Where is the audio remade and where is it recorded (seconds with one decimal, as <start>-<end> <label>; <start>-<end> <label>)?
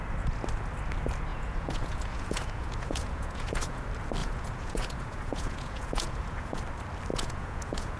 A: 0.0-1.3 recorded; 1.3-3.8 remade; 3.8-4.2 recorded; 4.2-6.6 remade; 6.6-7.1 recorded; 7.1-8.0 remade